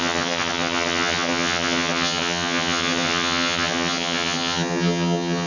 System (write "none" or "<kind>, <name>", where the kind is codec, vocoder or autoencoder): vocoder, HiFi-GAN